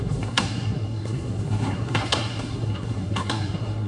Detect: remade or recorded remade